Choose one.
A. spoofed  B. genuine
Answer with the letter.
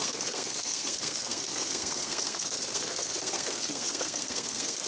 A